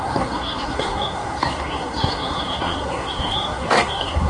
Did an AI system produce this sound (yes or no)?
yes